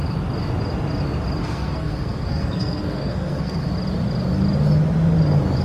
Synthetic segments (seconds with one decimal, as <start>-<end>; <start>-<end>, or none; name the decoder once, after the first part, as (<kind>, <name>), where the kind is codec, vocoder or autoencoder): 1.4-3.7 (codec, SNAC)